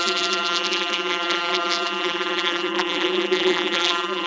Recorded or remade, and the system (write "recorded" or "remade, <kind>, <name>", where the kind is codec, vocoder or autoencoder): remade, vocoder, BigVGAN v2